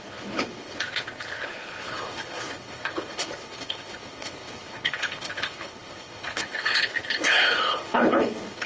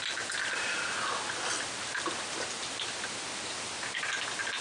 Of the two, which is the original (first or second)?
second